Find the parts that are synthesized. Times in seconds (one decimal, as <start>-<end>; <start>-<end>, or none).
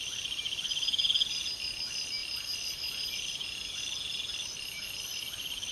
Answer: none